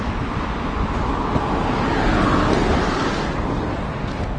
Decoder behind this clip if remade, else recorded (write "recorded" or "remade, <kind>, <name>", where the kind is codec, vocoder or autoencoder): recorded